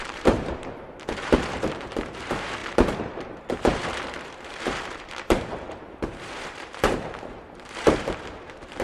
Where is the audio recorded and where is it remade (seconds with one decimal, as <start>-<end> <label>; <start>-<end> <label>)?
0.0-8.8 remade